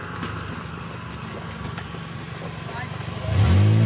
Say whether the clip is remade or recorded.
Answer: recorded